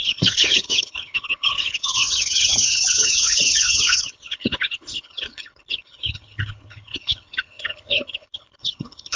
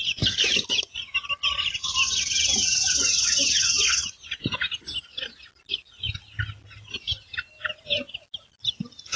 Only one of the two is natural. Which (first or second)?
second